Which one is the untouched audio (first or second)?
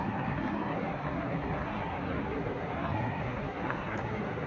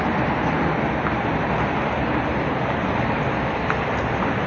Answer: second